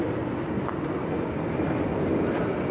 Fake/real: real